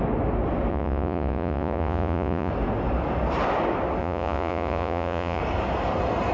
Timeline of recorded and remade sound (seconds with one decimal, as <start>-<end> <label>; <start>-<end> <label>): 0.0-0.7 recorded; 0.7-2.5 remade; 2.5-4.0 recorded; 4.0-5.4 remade; 5.4-6.3 recorded